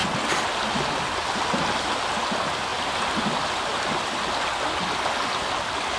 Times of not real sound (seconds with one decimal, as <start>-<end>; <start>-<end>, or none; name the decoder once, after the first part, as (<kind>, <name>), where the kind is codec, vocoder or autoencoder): 2.7-3.3 (vocoder, BigVGAN v2)